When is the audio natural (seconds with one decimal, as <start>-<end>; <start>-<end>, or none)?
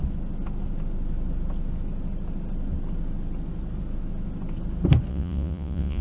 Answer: 0.0-5.1